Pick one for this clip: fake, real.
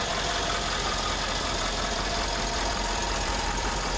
fake